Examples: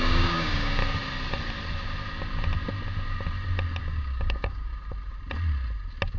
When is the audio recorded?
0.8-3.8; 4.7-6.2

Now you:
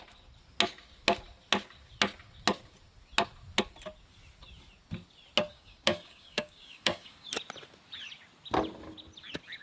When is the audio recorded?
0.0-5.5; 7.3-9.6

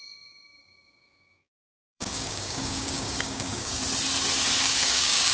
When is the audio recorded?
3.8-4.6

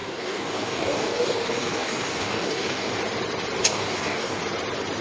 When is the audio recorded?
3.0-3.6; 4.4-5.0

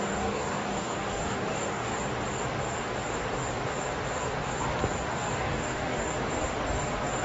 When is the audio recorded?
1.9-5.1; 6.1-7.2

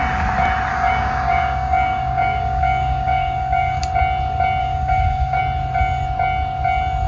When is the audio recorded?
0.0-0.7; 3.8-4.6; 5.4-7.1

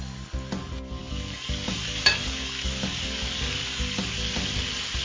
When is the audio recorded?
0.0-1.0; 4.0-5.0

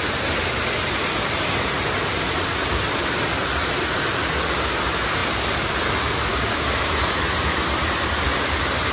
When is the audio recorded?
0.0-6.3; 6.9-8.9